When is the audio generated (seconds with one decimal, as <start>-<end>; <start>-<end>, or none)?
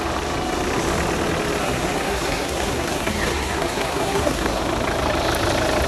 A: 1.6-4.6